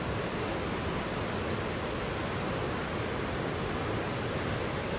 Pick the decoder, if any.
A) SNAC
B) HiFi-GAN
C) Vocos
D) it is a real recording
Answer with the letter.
D